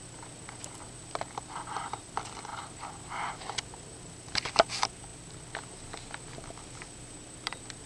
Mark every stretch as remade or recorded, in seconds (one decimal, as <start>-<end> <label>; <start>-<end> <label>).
0.0-7.9 remade